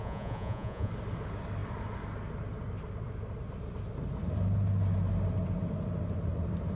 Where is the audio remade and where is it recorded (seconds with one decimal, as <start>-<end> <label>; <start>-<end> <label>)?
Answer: 0.0-0.9 remade; 0.9-6.8 recorded